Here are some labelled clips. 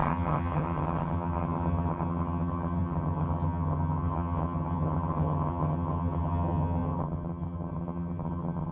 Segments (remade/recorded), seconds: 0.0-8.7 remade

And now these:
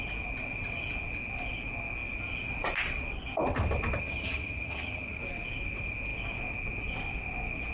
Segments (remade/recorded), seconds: 0.0-4.0 recorded; 4.0-5.2 remade; 5.2-7.7 recorded

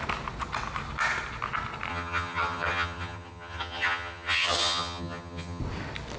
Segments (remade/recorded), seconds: 0.0-1.9 recorded; 1.9-5.6 remade; 5.6-6.2 recorded

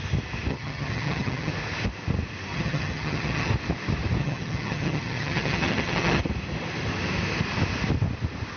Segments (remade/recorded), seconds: 0.0-0.5 recorded; 0.5-1.5 remade; 1.5-2.5 recorded; 2.5-3.5 remade; 3.5-4.2 recorded; 4.2-6.2 remade; 6.2-8.6 recorded

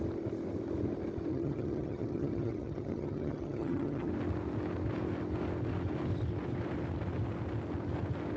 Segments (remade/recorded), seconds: 0.0-1.3 recorded; 1.3-4.1 remade; 4.1-8.4 recorded